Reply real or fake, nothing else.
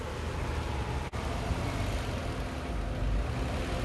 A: real